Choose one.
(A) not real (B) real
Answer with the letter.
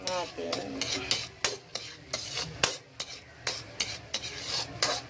B